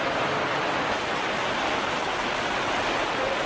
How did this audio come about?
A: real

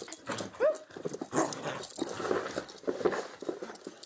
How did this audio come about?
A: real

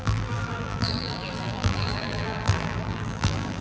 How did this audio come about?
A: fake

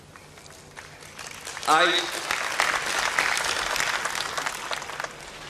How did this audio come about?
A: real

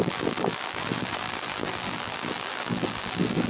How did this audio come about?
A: fake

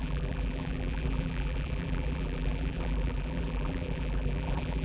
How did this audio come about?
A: fake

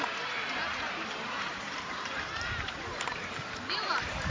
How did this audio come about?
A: fake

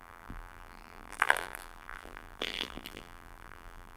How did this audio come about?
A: fake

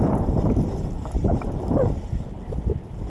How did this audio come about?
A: real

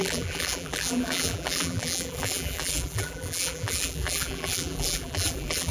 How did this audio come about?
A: fake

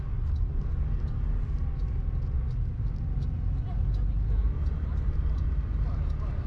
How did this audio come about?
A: real